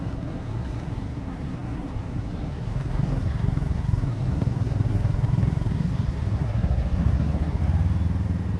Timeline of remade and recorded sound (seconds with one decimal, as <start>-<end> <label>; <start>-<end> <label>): 0.0-7.6 remade; 7.6-8.6 recorded